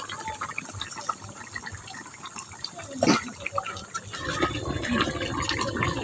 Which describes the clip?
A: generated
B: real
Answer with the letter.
B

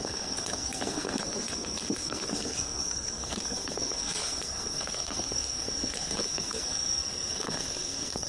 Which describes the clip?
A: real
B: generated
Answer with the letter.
B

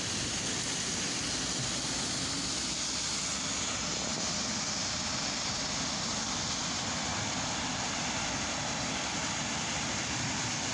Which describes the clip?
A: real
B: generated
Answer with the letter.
A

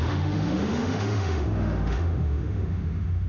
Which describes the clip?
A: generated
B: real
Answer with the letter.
A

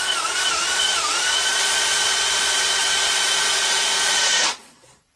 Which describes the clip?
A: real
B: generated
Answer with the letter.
B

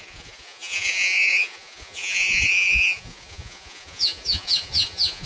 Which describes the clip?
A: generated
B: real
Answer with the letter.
A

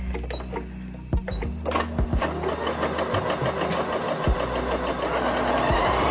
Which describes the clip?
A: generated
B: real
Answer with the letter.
B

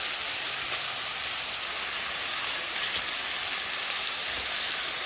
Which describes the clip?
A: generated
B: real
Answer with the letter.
B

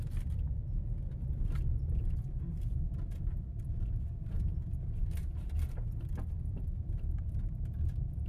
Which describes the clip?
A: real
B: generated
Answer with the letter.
B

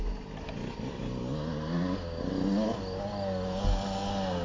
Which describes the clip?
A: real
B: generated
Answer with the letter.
A